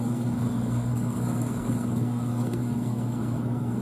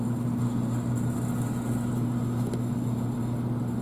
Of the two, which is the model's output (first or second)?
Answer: first